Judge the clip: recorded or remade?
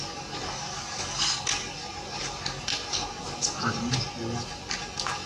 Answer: recorded